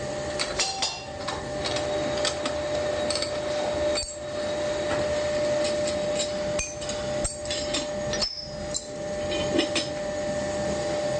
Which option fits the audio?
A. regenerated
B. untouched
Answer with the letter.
B